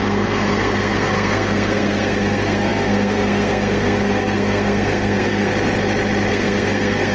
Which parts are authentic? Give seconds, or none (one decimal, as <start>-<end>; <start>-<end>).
5.5-6.3